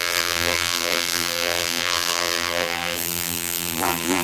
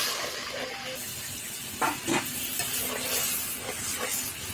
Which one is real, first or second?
second